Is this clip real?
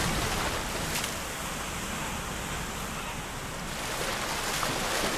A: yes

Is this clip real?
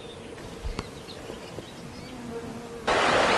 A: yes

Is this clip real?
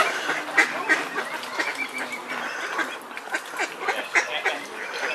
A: yes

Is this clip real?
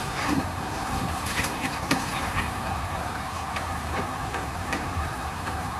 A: no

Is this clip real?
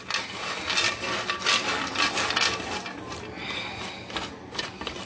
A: yes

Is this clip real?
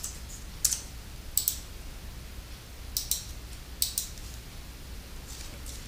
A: yes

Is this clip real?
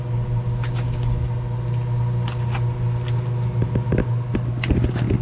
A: yes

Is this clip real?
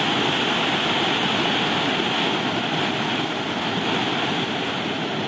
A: yes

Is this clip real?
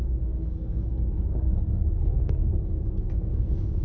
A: no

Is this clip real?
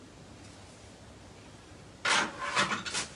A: yes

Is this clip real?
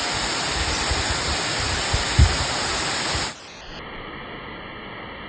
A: yes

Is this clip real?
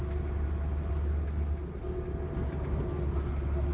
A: yes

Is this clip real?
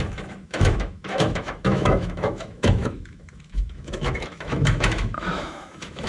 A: no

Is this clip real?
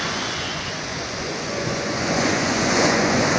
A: no